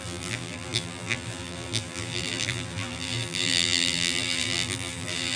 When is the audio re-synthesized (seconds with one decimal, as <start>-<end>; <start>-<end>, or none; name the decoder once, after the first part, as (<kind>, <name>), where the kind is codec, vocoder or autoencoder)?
0.0-5.4 (vocoder, BigVGAN v2)